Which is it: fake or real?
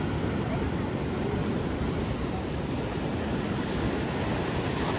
real